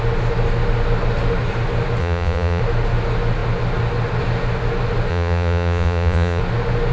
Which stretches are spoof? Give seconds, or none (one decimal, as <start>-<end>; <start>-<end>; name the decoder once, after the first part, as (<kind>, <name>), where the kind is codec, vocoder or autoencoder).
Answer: 2.0-2.6 (vocoder, Vocos); 5.1-6.4